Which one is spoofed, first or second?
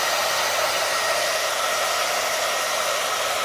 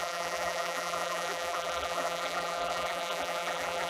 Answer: second